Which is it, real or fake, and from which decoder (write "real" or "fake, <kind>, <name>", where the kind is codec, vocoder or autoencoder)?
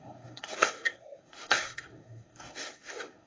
fake, codec, SNAC